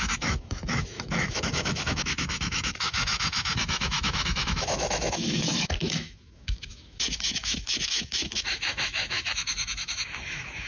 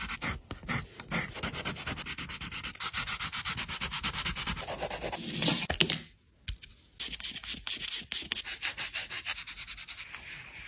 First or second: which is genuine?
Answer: second